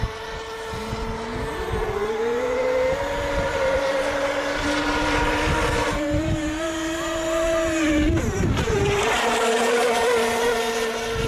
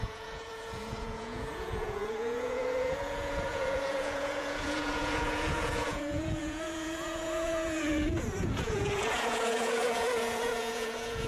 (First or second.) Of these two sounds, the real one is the first